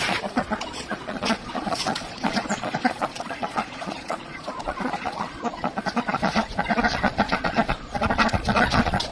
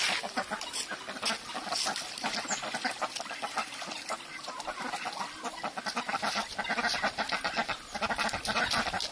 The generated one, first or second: first